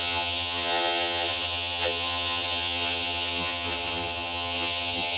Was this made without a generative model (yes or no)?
no